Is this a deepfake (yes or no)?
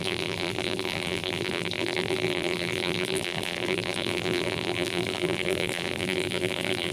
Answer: yes